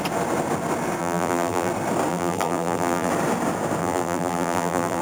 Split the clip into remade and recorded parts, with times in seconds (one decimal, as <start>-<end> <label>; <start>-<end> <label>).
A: 0.0-1.0 recorded; 1.0-1.7 remade; 1.7-2.1 recorded; 2.1-3.1 remade; 3.1-3.8 recorded; 3.8-5.0 remade